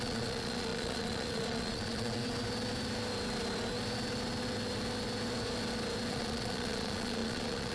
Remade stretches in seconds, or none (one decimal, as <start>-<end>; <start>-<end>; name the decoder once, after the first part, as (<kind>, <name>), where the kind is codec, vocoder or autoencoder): 0.0-2.2 (vocoder, Vocos); 6.1-7.7